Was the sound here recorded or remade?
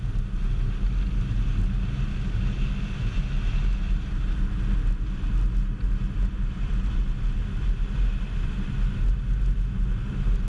recorded